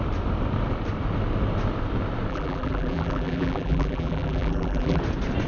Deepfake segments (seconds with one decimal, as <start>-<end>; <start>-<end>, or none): 2.3-5.0